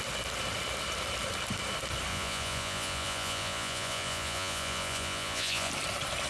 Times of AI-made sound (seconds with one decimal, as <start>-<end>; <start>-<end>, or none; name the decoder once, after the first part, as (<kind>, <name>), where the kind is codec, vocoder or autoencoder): 2.1-5.7 (vocoder, Vocos)